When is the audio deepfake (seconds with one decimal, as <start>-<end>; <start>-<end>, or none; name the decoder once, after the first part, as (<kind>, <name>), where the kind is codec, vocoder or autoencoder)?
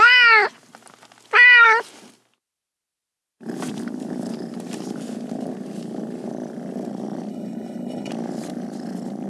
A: 7.3-8.1 (codec, HILCodec)